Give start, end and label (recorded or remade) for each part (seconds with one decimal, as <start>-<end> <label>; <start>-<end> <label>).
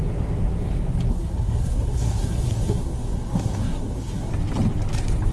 0.0-1.1 recorded; 1.1-4.3 remade; 4.3-5.3 recorded